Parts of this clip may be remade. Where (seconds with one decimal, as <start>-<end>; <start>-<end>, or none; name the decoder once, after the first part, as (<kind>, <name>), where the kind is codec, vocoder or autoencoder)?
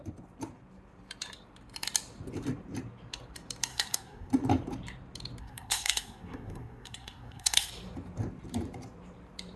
3.7-4.3 (codec, SNAC); 5.4-7.7